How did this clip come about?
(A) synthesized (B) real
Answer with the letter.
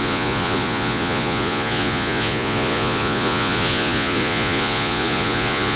A